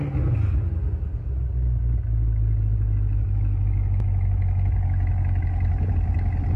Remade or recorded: recorded